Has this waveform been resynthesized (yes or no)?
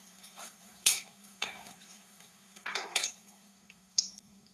yes